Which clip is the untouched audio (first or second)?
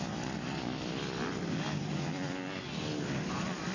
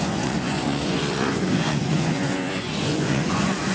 first